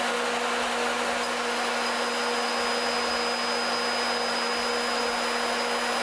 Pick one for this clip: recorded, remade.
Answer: recorded